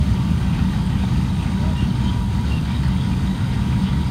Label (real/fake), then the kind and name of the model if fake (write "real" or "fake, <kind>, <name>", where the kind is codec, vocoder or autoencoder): fake, codec, DAC